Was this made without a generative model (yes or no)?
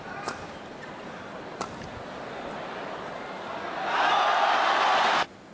yes